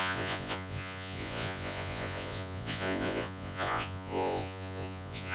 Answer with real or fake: fake